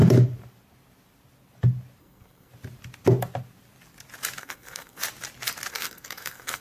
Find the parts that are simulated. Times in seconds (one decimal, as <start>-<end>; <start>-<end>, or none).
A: 2.0-2.5; 4.4-5.0; 5.7-6.6